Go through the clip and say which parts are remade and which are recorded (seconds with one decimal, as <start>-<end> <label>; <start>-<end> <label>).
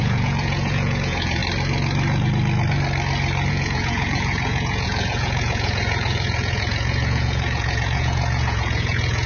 0.0-1.4 remade; 1.4-3.5 recorded; 3.5-9.3 remade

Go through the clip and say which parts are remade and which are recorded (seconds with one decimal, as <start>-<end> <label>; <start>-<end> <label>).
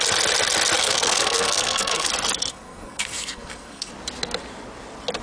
0.0-0.8 recorded; 0.8-2.1 remade; 2.1-2.5 recorded; 2.5-3.9 remade; 3.9-5.2 recorded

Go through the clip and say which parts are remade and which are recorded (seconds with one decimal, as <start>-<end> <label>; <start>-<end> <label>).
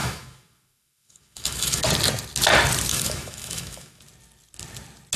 0.0-1.8 remade; 1.8-2.9 recorded; 2.9-4.0 remade; 4.0-5.2 recorded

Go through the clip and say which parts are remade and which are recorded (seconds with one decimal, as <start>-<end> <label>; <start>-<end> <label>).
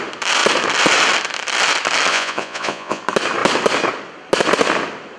0.0-2.1 recorded; 2.1-3.0 remade; 3.0-5.2 recorded